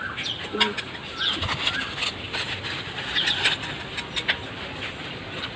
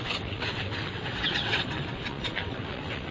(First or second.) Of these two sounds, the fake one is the second